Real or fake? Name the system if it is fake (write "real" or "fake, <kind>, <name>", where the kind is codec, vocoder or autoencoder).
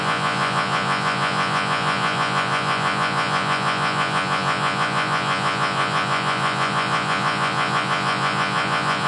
fake, vocoder, Vocos